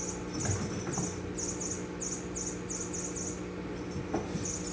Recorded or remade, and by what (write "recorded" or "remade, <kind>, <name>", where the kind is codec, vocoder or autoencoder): recorded